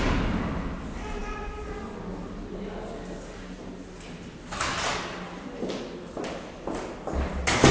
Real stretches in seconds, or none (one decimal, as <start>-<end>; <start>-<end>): 0.0-7.7